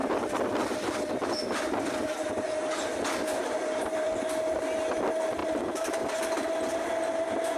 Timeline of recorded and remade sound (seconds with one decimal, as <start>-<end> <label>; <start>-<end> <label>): 0.0-3.4 recorded; 3.4-4.1 remade; 4.1-5.4 recorded; 5.4-6.1 remade; 6.1-7.6 recorded